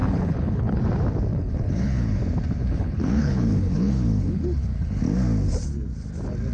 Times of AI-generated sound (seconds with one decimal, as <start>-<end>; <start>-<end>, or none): 0.0-0.8; 1.3-2.2; 2.6-5.0